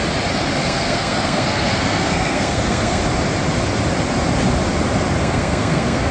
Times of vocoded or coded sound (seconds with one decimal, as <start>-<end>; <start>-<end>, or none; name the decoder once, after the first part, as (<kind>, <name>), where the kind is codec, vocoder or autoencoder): 0.6-3.0 (codec, SNAC); 5.2-6.1